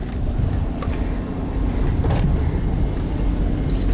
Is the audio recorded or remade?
recorded